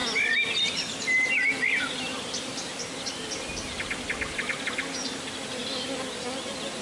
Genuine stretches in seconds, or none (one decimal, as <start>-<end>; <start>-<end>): 0.0-6.8